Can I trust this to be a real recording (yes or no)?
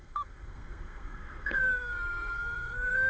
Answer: no